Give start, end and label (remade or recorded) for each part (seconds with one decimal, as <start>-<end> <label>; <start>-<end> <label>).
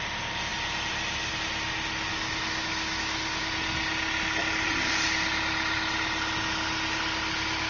0.0-2.1 recorded; 2.1-3.4 remade; 3.4-7.7 recorded